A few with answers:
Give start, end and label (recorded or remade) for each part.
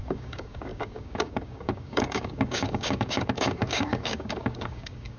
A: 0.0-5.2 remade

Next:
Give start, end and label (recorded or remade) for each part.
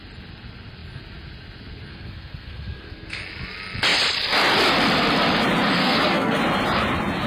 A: 0.0-1.9 recorded; 1.9-3.2 remade; 3.2-5.8 recorded; 5.8-6.4 remade; 6.4-7.3 recorded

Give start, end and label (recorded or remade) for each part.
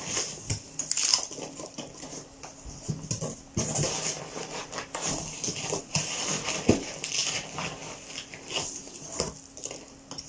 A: 0.0-10.3 recorded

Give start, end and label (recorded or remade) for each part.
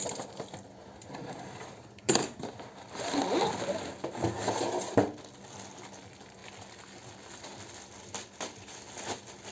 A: 0.0-9.5 recorded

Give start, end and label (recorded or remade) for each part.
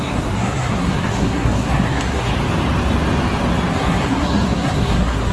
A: 0.0-2.3 remade; 2.3-3.7 recorded; 3.7-5.3 remade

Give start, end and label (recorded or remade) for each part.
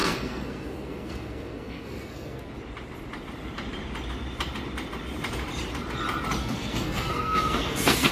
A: 0.0-2.5 remade; 2.5-6.4 recorded; 6.4-8.1 remade